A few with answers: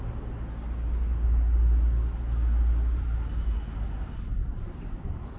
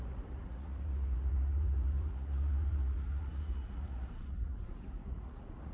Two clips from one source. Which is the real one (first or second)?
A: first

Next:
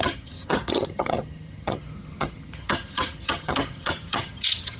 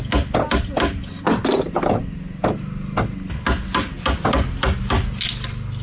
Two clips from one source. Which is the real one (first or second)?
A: second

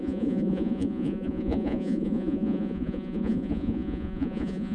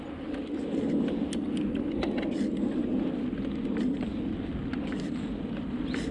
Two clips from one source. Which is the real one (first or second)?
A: second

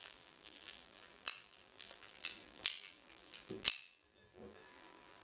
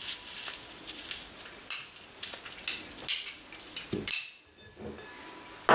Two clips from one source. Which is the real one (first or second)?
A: second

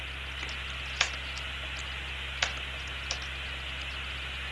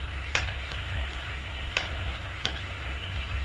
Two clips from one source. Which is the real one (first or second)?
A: first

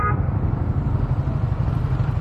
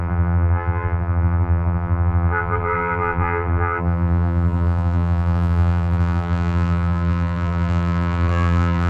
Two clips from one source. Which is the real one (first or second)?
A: first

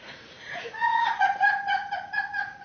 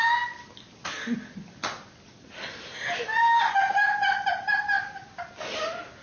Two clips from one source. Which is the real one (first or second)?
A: second